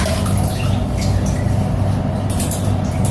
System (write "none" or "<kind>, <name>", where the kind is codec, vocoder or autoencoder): none